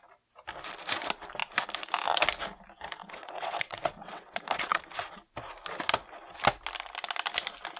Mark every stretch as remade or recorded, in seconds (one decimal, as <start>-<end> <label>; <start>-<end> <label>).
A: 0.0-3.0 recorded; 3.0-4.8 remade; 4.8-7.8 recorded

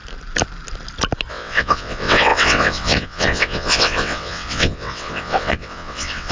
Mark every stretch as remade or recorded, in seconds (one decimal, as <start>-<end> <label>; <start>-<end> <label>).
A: 0.0-1.3 recorded; 1.3-6.3 remade

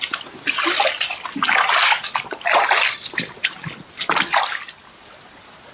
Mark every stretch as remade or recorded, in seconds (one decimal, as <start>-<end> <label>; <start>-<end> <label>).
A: 0.0-5.7 recorded

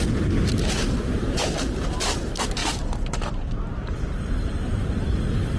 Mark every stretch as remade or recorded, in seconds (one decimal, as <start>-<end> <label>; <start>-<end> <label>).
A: 0.0-5.6 recorded

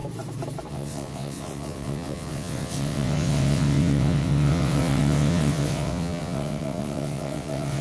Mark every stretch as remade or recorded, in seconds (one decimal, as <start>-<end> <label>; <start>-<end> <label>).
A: 0.0-0.7 recorded; 0.7-7.8 remade

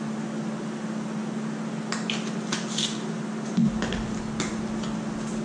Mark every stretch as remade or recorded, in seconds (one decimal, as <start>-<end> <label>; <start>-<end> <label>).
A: 0.0-5.4 recorded

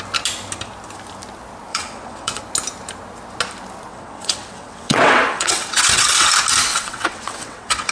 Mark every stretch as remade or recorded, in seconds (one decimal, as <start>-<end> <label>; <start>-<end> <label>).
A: 0.0-1.7 recorded; 1.7-2.4 remade; 2.4-3.9 recorded; 3.9-6.3 remade; 6.3-6.7 recorded; 6.7-7.9 remade

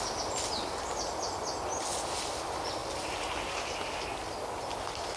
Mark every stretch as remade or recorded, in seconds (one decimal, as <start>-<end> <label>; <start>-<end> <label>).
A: 0.0-5.2 recorded